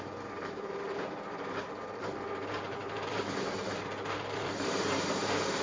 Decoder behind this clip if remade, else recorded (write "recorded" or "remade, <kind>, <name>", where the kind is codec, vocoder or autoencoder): remade, vocoder, BigVGAN v2